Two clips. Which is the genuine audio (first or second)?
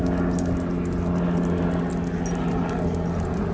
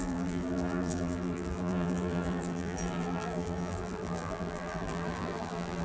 first